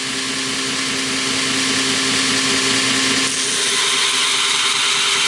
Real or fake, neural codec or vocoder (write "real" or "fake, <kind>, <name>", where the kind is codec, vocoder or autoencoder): real